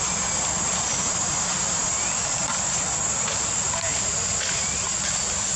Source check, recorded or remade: recorded